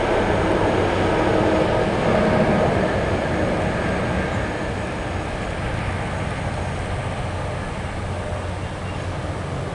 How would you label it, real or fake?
real